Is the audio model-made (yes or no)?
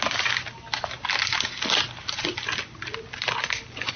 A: no